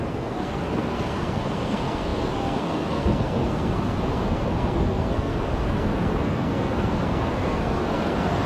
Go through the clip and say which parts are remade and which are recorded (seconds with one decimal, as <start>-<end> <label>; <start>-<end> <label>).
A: 0.0-8.5 remade